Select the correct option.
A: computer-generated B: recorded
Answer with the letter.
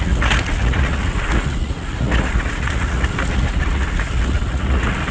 A